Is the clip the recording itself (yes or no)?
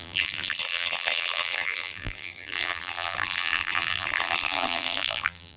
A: no